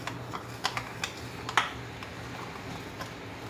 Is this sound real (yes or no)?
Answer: yes